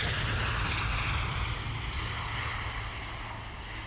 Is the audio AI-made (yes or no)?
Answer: no